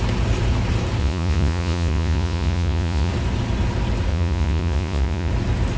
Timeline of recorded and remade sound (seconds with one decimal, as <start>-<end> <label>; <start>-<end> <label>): 0.0-1.0 recorded; 1.0-3.1 remade; 3.1-4.1 recorded; 4.1-5.3 remade; 5.3-5.8 recorded